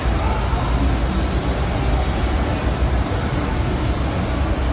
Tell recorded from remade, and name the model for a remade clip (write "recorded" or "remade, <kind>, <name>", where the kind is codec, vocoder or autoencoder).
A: recorded